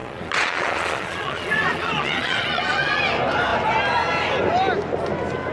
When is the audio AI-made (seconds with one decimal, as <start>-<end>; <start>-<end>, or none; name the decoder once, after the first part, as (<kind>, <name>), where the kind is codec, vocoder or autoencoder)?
0.0-3.0 (vocoder, Vocos)